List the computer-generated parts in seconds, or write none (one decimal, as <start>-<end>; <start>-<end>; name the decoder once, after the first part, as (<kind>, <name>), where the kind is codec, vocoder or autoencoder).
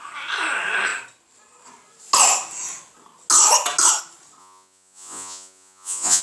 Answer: 4.4-6.2 (vocoder, Vocos)